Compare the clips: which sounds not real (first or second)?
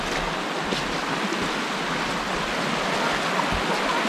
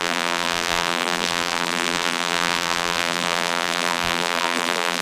second